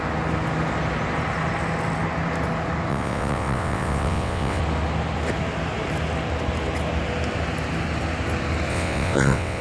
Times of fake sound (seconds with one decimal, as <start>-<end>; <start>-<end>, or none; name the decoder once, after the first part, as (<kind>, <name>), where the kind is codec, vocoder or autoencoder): 2.9-4.6 (vocoder, WaveNeXt); 8.7-9.6